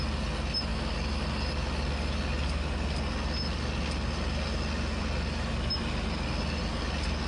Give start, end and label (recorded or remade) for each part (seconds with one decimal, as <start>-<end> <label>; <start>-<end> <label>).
0.0-7.3 recorded